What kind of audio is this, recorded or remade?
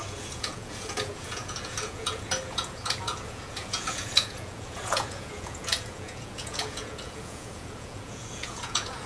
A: remade